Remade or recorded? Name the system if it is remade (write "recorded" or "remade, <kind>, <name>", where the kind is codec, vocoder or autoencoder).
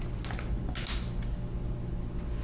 recorded